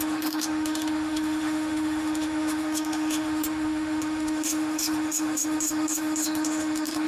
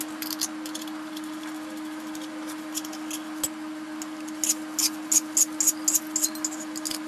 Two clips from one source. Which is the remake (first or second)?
first